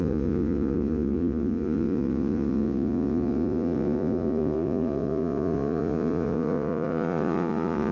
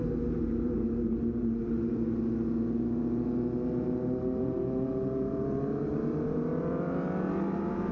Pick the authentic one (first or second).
second